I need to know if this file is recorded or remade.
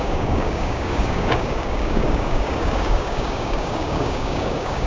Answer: remade